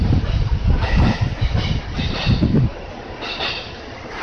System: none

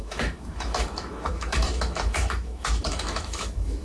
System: autoencoder, DAC-VAE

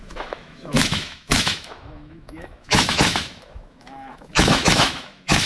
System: autoencoder, DAC-VAE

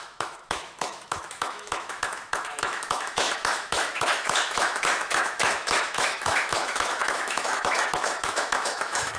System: autoencoder, DAC-VAE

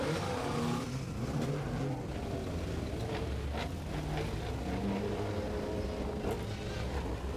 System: none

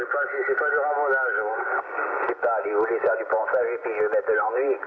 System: none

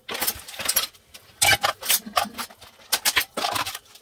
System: none